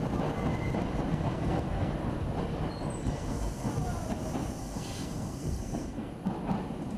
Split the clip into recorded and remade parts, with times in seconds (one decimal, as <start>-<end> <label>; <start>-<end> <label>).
0.0-1.1 recorded; 1.1-1.9 remade; 1.9-3.0 recorded; 3.0-3.7 remade; 3.7-4.6 recorded; 4.6-6.1 remade; 6.1-7.0 recorded